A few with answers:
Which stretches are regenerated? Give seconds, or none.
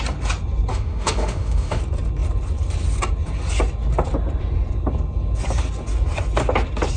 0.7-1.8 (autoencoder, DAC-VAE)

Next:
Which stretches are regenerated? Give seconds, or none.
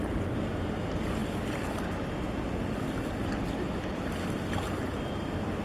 none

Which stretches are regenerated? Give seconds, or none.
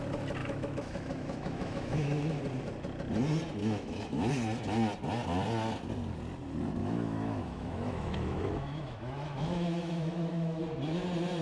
0.4-2.4 (autoencoder, DAC-VAE); 3.6-4.3; 6.8-10.6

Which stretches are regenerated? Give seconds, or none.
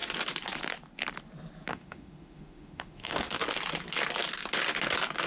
1.7-3.4 (autoencoder, DAC-VAE)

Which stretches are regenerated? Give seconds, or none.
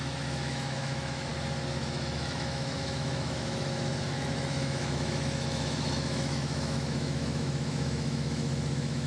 0.0-1.3 (autoencoder, DAC-VAE); 1.8-9.1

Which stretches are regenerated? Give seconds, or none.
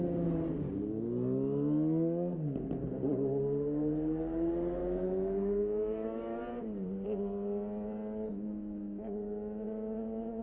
4.8-6.4 (autoencoder, DAC-VAE); 8.3-10.4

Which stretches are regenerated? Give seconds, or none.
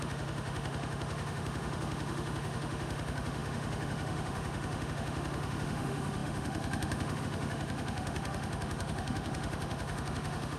0.0-10.6 (autoencoder, DAC-VAE)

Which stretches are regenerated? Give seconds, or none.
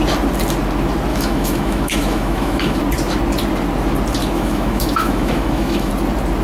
1.1-2.8 (autoencoder, DAC-VAE); 4.2-5.9